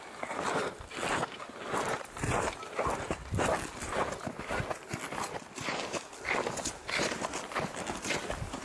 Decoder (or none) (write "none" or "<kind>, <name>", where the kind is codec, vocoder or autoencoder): none